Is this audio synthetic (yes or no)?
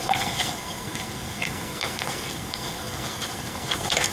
yes